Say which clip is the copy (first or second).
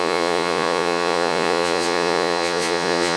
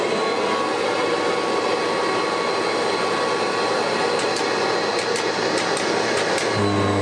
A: first